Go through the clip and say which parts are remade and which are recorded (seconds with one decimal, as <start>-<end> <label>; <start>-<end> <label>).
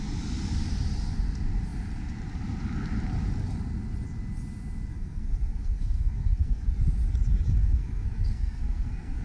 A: 0.0-4.9 recorded; 4.9-6.6 remade; 6.6-7.6 recorded; 7.6-9.2 remade